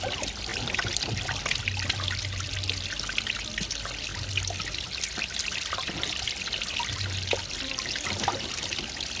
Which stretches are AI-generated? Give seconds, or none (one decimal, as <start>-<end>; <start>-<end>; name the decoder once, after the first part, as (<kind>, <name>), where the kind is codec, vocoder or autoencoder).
none